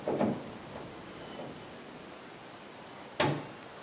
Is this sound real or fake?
real